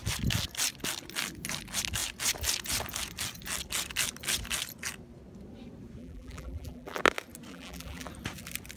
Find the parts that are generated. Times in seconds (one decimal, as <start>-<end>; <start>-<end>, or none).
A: 6.0-7.0; 7.5-8.1